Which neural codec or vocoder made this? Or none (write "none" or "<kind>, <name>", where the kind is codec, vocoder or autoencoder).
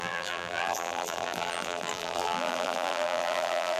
vocoder, BigVGAN v2